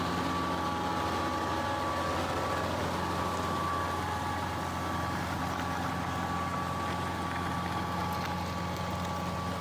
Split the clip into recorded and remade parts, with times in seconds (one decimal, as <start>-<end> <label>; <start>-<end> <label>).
0.0-9.6 recorded

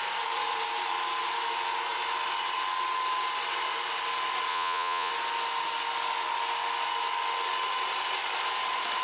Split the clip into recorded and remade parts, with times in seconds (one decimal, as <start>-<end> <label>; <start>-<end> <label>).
0.0-4.5 recorded; 4.5-5.1 remade; 5.1-9.0 recorded

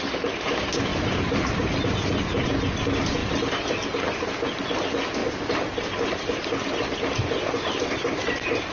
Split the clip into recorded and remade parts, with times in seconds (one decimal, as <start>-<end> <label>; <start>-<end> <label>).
0.0-0.9 recorded; 0.9-1.9 remade; 1.9-3.2 recorded; 3.2-4.3 remade; 4.3-8.7 recorded

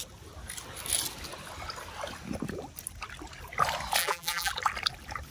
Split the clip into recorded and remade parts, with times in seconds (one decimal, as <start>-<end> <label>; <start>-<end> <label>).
0.0-4.0 recorded; 4.0-4.5 remade; 4.5-5.3 recorded

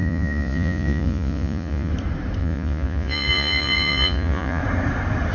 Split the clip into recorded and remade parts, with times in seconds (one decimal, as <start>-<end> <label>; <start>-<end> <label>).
0.0-1.9 remade; 1.9-2.4 recorded; 2.4-4.6 remade; 4.6-5.3 recorded